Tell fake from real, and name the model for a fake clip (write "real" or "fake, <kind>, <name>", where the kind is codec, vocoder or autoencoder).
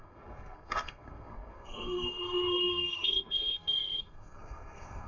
fake, codec, SNAC